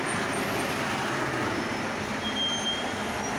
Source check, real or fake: real